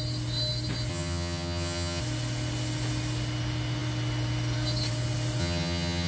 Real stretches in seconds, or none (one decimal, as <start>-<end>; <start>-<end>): 0.0-0.9; 2.0-5.4